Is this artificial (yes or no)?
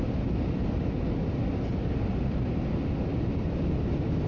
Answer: no